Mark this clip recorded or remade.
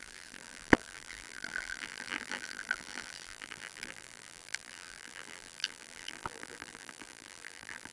remade